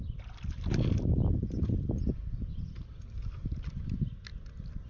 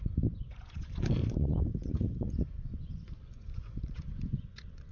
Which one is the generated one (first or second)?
second